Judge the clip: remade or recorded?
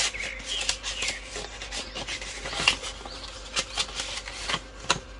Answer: recorded